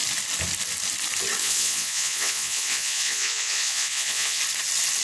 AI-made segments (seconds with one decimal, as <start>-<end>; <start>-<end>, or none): 1.4-4.4